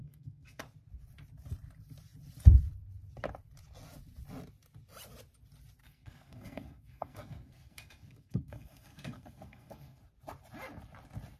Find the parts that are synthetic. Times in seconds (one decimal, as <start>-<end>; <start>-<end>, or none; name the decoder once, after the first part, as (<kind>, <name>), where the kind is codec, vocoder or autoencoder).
0.0-0.6 (codec, SNAC); 5.8-10.0

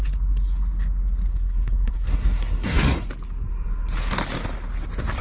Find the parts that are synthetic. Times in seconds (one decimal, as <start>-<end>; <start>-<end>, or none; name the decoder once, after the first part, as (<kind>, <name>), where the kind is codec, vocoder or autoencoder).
1.3-3.1 (codec, SNAC)

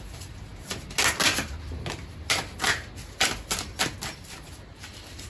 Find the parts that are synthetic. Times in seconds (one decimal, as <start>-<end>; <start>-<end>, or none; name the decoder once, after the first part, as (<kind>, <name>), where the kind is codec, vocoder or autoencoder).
none

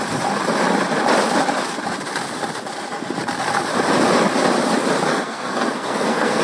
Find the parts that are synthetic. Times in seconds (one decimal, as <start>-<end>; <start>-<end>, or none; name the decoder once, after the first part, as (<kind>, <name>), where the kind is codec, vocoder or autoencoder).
5.1-6.4 (codec, SNAC)

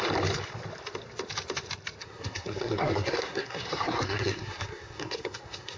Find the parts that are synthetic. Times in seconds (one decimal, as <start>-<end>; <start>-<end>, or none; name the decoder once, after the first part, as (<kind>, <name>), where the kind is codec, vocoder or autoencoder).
2.0-5.8 (codec, SNAC)